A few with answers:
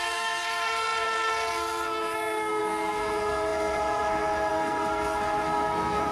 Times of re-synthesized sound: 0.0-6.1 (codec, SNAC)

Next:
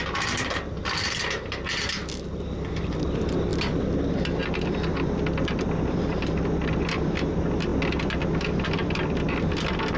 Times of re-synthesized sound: 0.0-7.7 (vocoder, BigVGAN v2); 8.2-10.0

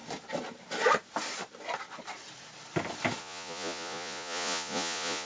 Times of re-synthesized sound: 3.2-5.3 (vocoder, Vocos)

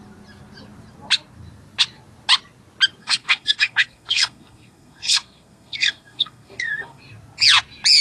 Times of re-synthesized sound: 3.0-7.0 (codec, SNAC)

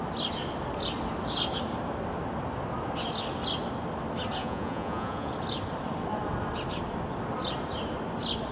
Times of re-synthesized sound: 4.4-5.3 (vocoder, Vocos)

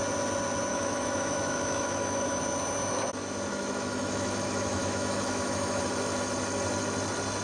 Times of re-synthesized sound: 0.7-2.4 (autoencoder, DAC-VAE); 3.5-5.8

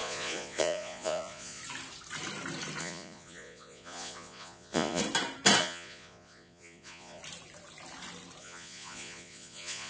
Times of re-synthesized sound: 0.0-1.6 (vocoder, Vocos); 2.8-5.0; 5.6-7.2; 8.4-9.9

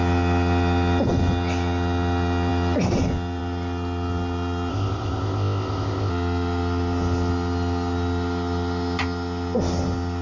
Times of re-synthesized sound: 4.7-6.1 (codec, ZipCodec)